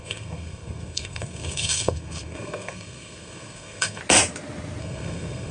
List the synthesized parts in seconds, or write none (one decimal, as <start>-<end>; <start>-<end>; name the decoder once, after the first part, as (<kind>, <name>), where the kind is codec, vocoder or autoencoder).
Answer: 0.0-4.0 (codec, SNAC); 4.8-5.5